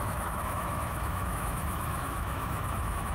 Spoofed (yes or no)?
yes